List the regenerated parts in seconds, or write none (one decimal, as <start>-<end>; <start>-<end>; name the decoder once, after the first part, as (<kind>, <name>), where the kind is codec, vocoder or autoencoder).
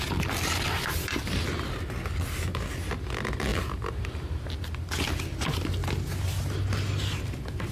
none